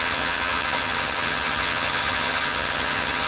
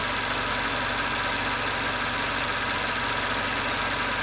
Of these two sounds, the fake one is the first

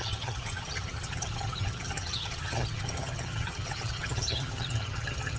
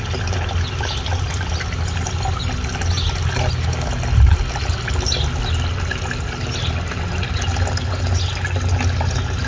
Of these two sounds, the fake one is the first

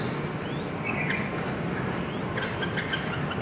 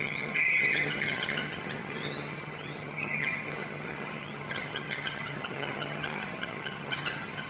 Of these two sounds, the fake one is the second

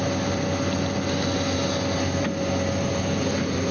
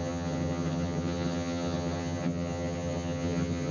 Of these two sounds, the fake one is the second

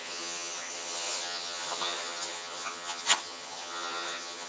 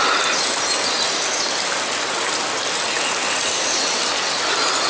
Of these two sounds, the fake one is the first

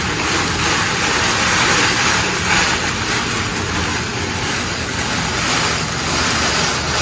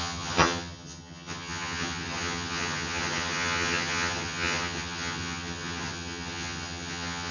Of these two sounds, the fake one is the second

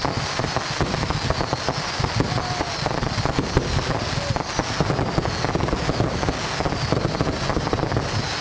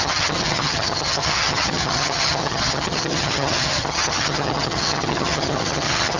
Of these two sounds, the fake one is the second